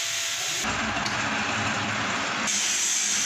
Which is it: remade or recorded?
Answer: remade